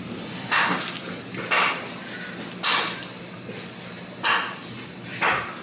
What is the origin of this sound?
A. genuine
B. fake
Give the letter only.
A